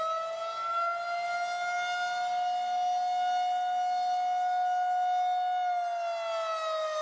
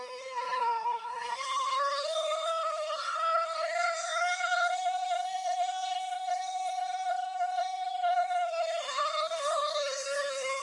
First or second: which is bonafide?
first